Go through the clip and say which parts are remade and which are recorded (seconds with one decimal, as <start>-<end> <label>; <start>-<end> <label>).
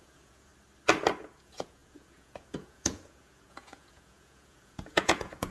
0.0-0.5 remade; 0.5-1.2 recorded; 1.2-5.5 remade